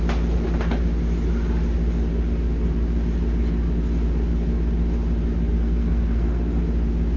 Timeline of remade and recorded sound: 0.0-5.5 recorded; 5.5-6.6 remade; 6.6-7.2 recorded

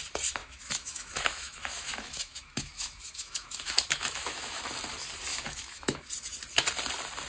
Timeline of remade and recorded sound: 0.0-0.4 recorded; 0.4-4.6 remade; 4.6-5.3 recorded; 5.3-6.1 remade; 6.1-7.3 recorded

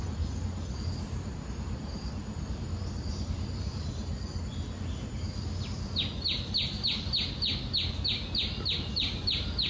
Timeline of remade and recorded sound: 0.0-4.1 remade; 4.1-8.8 recorded; 8.8-9.7 remade

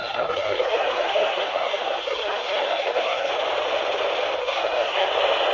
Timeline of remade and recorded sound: 0.0-3.3 remade; 3.3-4.4 recorded; 4.4-5.1 remade; 5.1-5.5 recorded

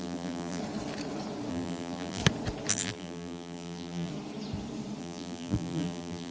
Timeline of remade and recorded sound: 0.0-0.6 remade; 0.6-1.5 recorded; 1.5-2.2 remade; 2.2-2.7 recorded; 2.7-4.1 remade; 4.1-5.0 recorded; 5.0-6.3 remade

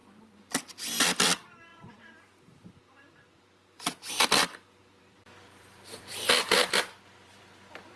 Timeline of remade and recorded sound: 0.0-1.7 remade; 1.7-4.1 recorded; 4.1-8.0 remade